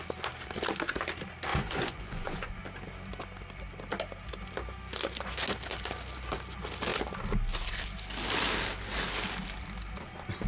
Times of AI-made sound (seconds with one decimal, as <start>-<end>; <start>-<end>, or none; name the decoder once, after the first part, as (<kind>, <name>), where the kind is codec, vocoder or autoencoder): 1.5-2.5 (vocoder, Vocos)